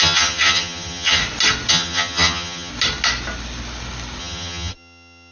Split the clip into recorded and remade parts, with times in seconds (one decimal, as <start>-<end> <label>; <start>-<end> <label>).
0.0-1.2 remade; 1.2-1.7 recorded; 1.7-2.7 remade; 2.7-4.2 recorded; 4.2-5.3 remade